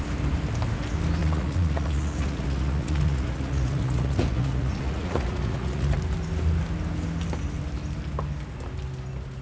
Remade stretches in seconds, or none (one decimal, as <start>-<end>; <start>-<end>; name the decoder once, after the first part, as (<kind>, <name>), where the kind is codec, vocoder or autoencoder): 1.2-6.0 (vocoder, Vocos)